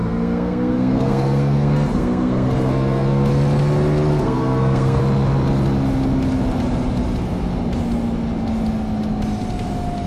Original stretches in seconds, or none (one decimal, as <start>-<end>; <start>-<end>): 3.3-4.1; 5.0-10.1